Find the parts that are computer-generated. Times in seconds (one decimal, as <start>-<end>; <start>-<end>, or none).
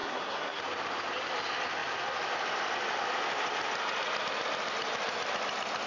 0.0-0.6